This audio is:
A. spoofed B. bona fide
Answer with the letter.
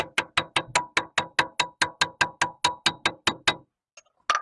B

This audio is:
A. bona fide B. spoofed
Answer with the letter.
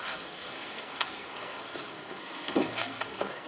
B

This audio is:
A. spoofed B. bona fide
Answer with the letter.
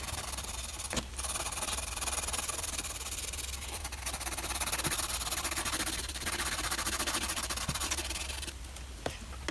B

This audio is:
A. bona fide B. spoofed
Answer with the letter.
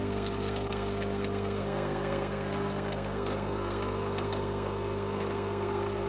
B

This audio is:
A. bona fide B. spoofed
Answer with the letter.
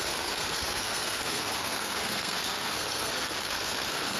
B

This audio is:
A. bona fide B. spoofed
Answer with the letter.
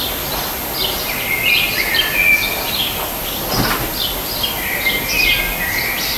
A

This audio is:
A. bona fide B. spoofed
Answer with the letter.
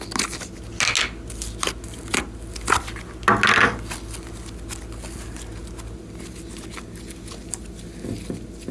A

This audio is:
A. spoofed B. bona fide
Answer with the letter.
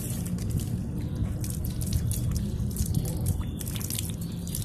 B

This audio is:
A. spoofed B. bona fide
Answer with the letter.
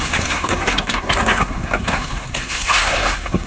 A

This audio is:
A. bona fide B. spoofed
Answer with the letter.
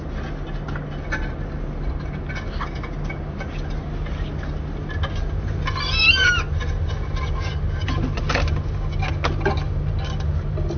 A